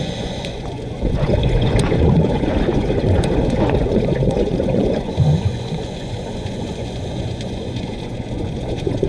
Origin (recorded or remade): remade